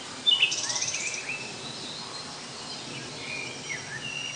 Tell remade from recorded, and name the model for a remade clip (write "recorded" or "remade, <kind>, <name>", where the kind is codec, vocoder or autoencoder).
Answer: recorded